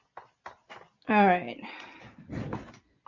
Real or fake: real